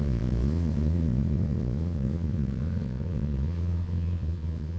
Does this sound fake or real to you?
fake